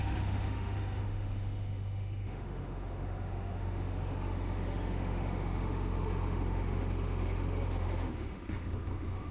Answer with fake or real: fake